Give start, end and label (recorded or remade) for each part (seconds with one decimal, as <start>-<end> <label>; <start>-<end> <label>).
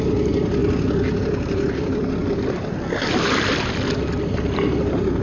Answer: 0.0-5.2 recorded